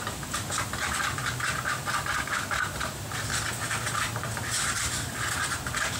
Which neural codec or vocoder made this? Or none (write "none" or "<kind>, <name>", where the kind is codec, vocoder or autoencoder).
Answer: none